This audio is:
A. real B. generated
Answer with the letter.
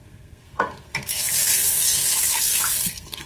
B